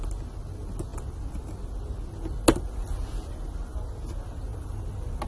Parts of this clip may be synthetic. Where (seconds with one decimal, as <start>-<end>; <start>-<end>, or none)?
none